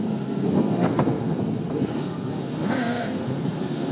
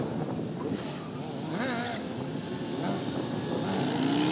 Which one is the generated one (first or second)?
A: first